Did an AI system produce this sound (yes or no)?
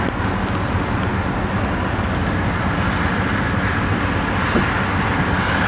no